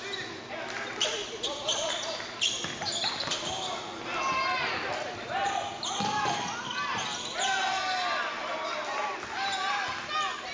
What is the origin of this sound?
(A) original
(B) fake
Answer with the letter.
A